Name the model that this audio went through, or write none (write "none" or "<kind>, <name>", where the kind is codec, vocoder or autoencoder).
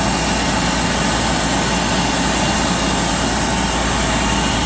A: none